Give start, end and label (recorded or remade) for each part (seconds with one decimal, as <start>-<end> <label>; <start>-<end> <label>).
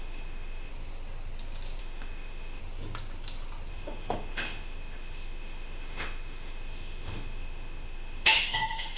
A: 0.0-0.7 remade; 0.7-1.8 recorded; 1.8-2.6 remade; 2.6-3.7 recorded; 3.7-9.0 remade